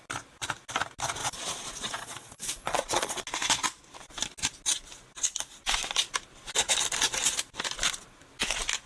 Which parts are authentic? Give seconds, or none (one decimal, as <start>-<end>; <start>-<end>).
0.0-1.2; 3.2-8.9